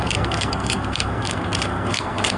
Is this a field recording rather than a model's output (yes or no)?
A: no